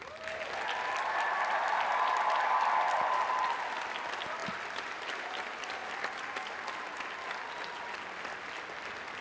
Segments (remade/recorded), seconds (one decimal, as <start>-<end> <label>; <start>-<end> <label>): 0.0-4.4 recorded; 4.4-5.3 remade; 5.3-9.2 recorded